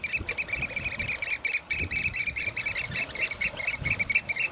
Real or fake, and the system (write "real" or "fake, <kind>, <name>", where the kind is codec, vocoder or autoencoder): real